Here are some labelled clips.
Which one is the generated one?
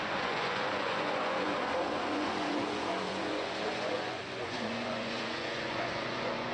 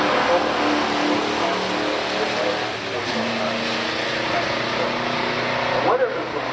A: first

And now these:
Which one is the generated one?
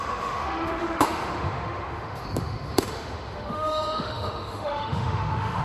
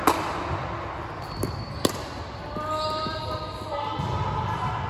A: first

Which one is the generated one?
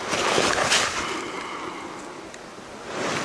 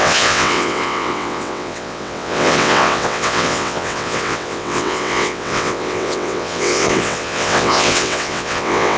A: second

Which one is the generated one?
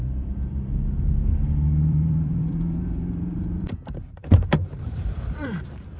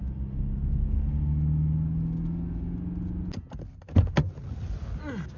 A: first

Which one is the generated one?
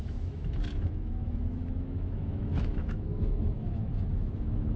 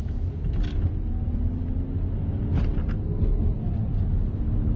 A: first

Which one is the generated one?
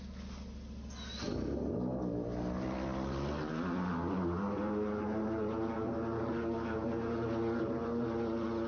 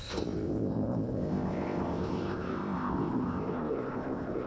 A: second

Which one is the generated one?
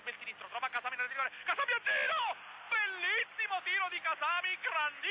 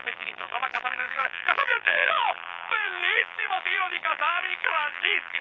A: second